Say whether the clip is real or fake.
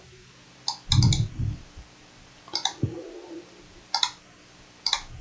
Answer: real